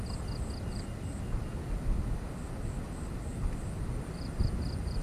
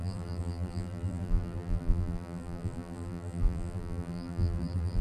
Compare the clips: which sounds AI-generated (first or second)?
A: second